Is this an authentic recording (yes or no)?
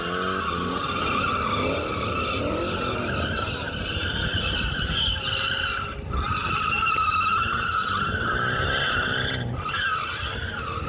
yes